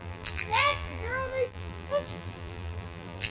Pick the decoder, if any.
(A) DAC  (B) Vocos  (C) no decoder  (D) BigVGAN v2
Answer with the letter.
D